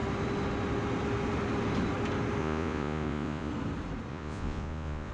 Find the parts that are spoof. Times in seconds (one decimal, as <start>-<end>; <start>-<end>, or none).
2.4-3.5; 4.1-5.1